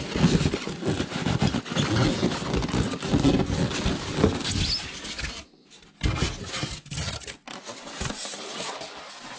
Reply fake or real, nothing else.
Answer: real